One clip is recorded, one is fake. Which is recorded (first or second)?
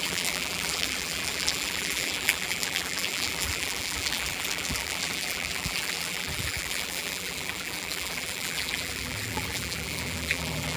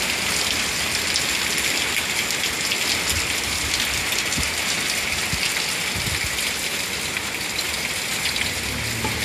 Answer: second